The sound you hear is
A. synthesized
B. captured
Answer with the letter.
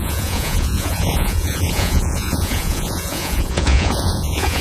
A